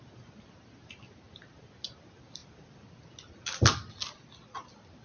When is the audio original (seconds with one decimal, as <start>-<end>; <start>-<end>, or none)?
0.0-5.0